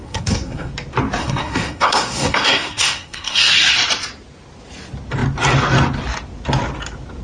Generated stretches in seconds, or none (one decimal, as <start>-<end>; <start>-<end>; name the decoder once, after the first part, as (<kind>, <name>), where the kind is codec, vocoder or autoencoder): 0.0-0.7 (codec, SNAC); 1.2-3.5